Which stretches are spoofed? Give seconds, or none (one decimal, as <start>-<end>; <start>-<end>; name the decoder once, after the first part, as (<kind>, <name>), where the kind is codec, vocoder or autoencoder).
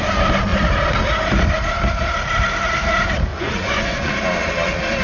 3.3-4.1 (vocoder, Vocos)